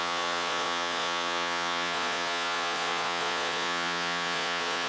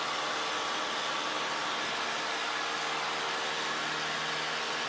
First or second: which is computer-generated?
first